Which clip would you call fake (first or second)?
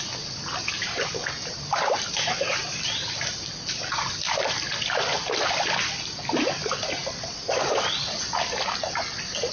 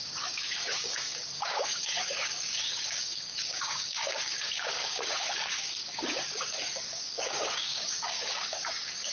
second